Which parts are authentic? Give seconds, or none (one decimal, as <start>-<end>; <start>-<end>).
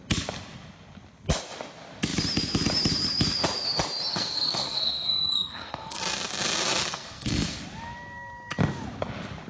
0.0-4.1; 6.0-6.8; 7.6-9.5